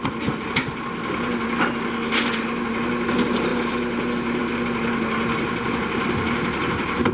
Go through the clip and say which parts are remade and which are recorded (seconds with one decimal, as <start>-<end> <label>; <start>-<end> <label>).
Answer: 0.0-7.1 recorded